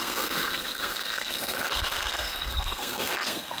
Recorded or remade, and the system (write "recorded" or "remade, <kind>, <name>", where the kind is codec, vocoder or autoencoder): remade, codec, SNAC